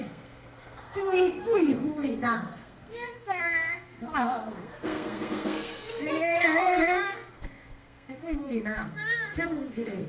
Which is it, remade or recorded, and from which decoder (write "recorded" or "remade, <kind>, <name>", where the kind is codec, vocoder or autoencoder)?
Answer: remade, codec, SNAC